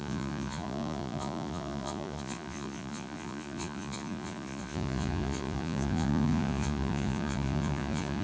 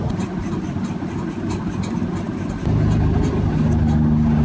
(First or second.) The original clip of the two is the second